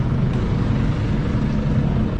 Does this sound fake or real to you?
real